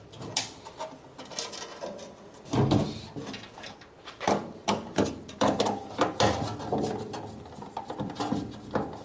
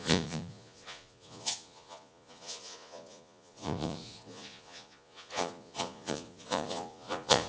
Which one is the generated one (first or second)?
second